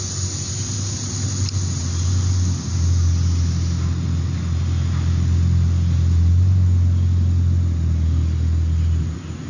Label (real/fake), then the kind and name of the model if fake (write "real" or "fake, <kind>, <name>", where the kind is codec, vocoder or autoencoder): real